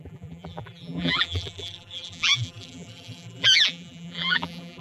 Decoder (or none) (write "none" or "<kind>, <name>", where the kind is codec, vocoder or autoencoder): vocoder, BigVGAN v2